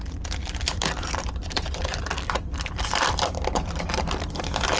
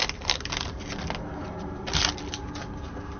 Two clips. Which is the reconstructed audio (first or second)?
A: first